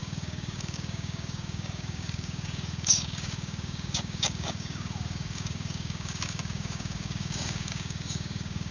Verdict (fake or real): fake